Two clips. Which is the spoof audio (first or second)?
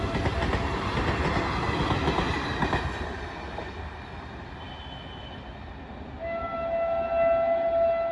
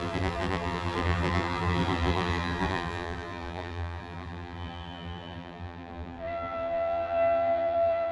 second